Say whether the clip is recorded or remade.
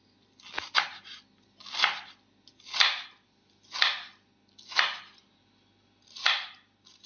recorded